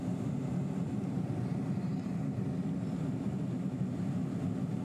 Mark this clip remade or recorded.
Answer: remade